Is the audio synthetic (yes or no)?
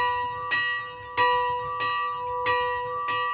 no